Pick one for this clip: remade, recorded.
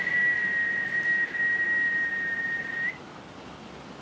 recorded